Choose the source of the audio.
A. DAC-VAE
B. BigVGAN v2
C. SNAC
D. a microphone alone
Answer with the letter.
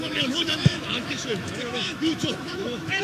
A